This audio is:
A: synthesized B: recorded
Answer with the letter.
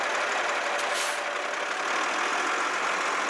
B